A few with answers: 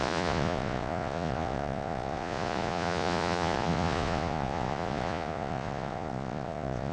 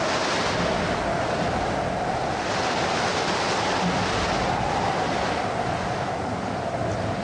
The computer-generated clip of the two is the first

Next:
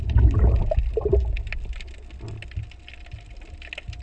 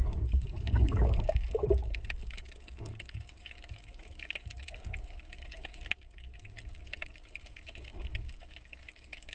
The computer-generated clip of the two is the second